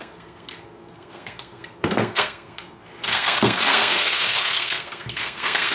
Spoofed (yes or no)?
yes